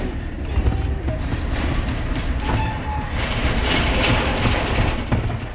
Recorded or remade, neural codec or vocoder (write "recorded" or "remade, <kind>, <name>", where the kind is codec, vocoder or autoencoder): recorded